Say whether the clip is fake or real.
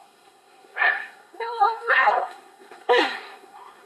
fake